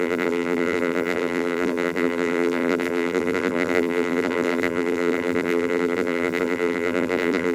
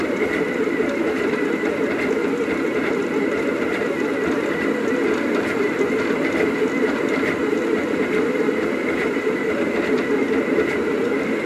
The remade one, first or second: first